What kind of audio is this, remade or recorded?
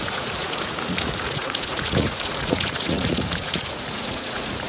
remade